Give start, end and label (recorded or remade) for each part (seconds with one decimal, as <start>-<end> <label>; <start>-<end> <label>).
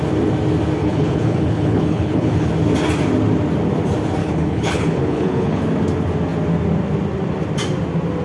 0.0-0.8 recorded; 0.8-2.5 remade; 2.5-4.2 recorded; 4.2-5.6 remade; 5.6-8.2 recorded